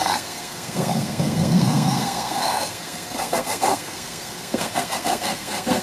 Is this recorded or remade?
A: remade